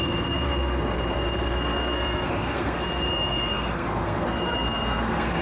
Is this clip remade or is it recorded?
remade